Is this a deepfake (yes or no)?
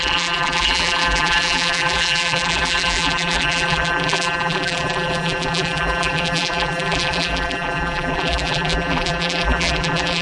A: yes